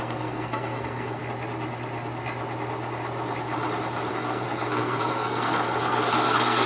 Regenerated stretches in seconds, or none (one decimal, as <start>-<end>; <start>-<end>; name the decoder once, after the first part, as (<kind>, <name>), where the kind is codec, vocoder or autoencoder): 0.0-1.2 (codec, SNAC); 4.1-6.7